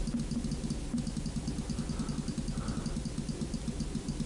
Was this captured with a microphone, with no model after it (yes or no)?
yes